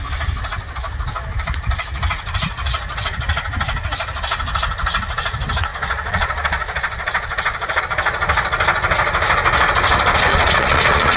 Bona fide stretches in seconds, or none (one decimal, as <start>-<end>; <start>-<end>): 0.0-5.7; 7.8-10.3